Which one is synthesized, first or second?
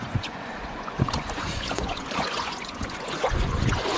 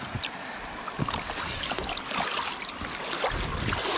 first